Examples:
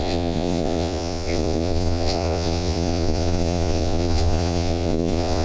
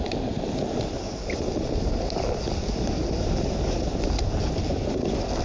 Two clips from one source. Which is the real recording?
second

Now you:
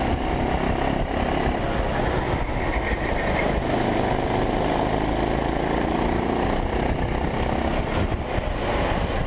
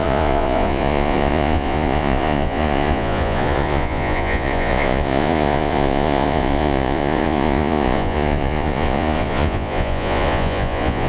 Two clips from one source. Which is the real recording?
first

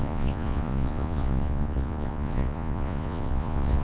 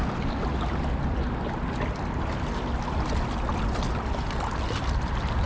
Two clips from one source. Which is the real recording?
second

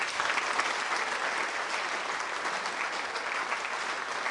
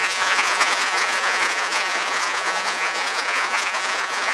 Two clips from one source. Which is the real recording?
first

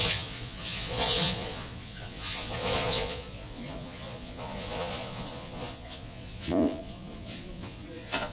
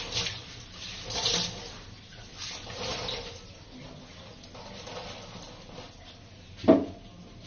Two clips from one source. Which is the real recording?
second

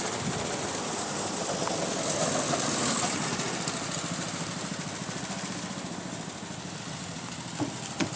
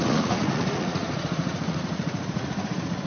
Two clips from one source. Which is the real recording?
first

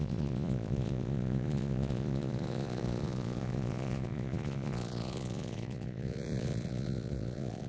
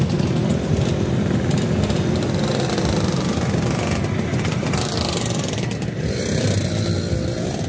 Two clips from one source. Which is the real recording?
second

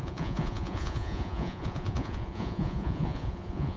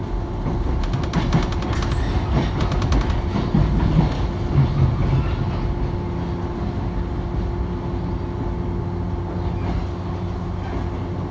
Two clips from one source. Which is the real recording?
second